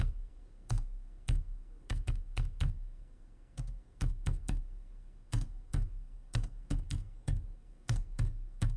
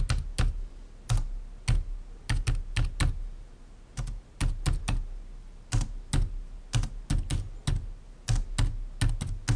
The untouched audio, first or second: second